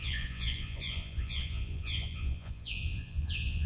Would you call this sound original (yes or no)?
no